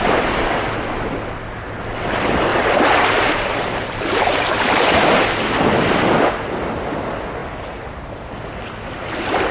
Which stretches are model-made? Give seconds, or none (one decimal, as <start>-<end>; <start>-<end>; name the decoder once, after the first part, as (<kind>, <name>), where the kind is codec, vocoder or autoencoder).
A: 2.5-5.0 (vocoder, BigVGAN v2); 7.4-8.1